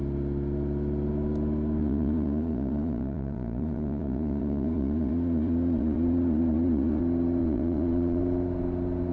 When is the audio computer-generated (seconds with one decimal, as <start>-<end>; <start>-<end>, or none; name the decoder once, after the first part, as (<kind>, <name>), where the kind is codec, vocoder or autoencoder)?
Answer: 1.8-7.0 (vocoder, Vocos); 7.4-8.2